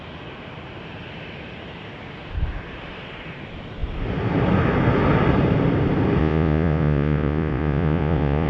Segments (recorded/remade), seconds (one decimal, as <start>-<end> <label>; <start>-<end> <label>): 0.0-6.2 recorded; 6.2-8.5 remade

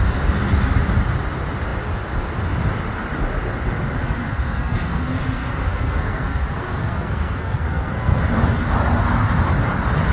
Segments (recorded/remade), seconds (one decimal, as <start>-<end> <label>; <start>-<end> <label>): 0.0-4.0 recorded; 4.0-8.2 remade; 8.2-10.1 recorded

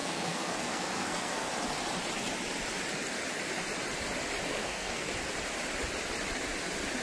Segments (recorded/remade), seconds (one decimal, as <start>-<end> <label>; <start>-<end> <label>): 0.0-1.5 remade; 1.5-4.5 recorded; 4.5-5.1 remade; 5.1-7.0 recorded

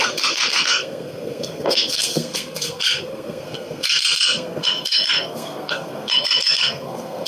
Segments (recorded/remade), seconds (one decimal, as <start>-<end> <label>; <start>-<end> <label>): 0.0-7.3 remade

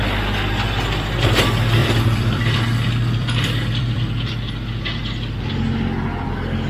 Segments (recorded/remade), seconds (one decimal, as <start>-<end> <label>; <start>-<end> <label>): 0.0-1.8 recorded; 1.8-4.5 remade; 4.5-6.7 recorded

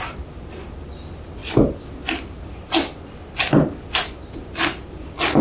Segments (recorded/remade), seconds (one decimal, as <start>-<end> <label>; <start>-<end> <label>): 0.0-5.4 recorded

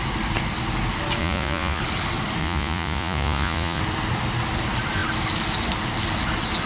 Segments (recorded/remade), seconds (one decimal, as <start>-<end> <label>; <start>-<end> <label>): 0.0-1.2 recorded; 1.2-1.8 remade; 1.8-2.4 recorded; 2.4-3.8 remade; 3.8-6.7 recorded

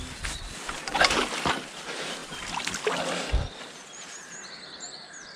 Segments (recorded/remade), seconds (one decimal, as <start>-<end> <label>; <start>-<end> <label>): 0.0-5.4 recorded